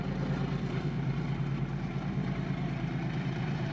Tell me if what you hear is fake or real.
fake